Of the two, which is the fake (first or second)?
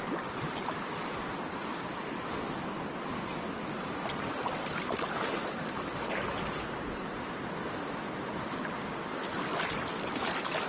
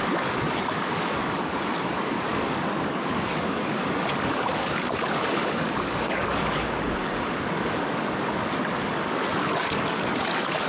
second